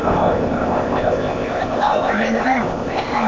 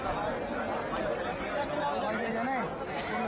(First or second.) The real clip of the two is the second